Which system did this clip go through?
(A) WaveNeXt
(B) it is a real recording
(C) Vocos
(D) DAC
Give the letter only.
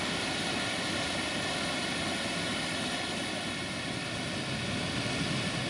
B